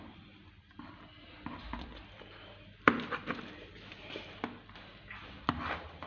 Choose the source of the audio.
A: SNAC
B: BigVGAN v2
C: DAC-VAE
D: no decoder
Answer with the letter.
B